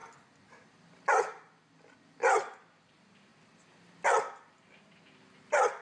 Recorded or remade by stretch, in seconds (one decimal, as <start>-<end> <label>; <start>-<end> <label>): 0.0-3.3 remade; 3.3-4.5 recorded; 4.5-5.8 remade